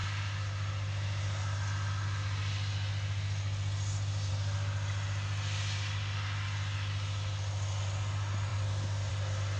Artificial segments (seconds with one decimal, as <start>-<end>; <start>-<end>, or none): none